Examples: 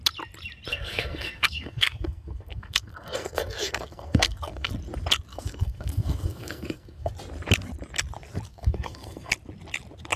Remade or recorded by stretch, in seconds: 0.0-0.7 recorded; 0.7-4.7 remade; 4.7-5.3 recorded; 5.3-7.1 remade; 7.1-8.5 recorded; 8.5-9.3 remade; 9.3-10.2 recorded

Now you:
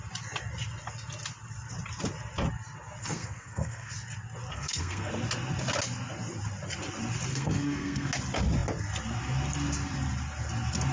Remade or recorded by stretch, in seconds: 0.0-3.0 recorded; 3.0-3.9 remade; 3.9-4.5 recorded; 4.5-5.1 remade; 5.1-7.3 recorded; 7.3-8.1 remade; 8.1-10.9 recorded

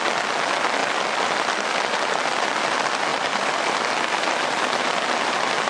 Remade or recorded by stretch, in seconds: 0.0-0.8 recorded; 0.8-1.7 remade; 1.7-3.1 recorded; 3.1-4.2 remade; 4.2-5.7 recorded

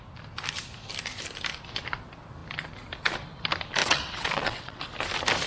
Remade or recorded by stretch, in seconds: 0.0-3.8 recorded; 3.8-4.8 remade; 4.8-5.5 recorded

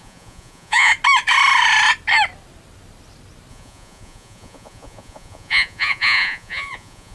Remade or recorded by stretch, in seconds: 0.0-0.9 remade; 0.9-3.5 recorded; 3.5-7.1 remade

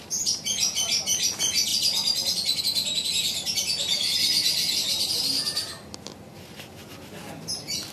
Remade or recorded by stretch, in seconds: 0.0-7.9 recorded

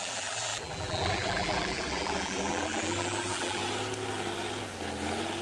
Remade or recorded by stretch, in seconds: 0.0-3.6 remade; 3.6-5.4 recorded